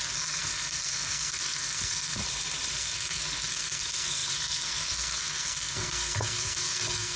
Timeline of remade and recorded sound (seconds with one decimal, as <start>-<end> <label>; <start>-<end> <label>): 0.0-2.2 remade; 2.2-2.7 recorded; 2.7-7.2 remade